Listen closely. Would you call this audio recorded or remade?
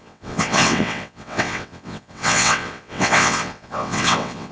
remade